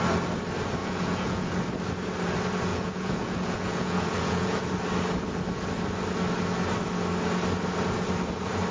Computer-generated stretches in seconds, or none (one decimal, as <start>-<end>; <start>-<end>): 0.8-1.5; 2.7-4.6